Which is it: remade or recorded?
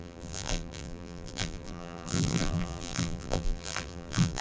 remade